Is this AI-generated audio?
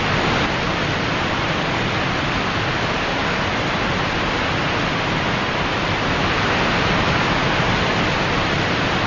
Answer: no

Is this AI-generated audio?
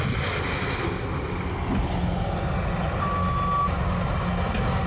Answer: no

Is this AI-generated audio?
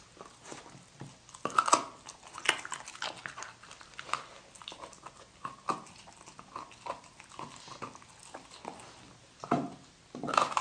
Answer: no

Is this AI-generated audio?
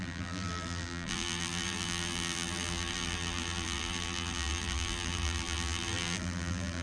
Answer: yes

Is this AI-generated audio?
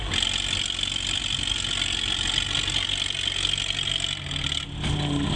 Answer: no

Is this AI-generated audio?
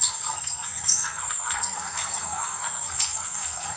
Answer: yes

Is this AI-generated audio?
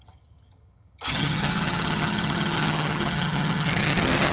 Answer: yes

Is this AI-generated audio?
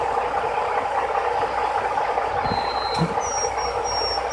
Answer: no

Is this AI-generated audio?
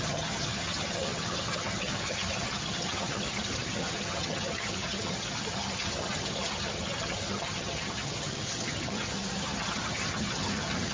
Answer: yes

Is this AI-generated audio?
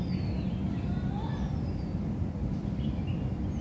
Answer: no